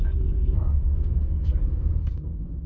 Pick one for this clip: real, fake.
fake